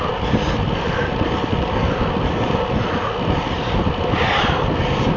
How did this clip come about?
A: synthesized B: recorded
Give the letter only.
B